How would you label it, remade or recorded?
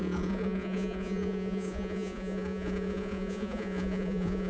remade